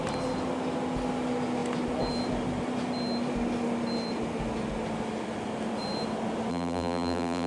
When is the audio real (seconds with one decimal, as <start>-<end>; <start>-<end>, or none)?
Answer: 0.0-6.5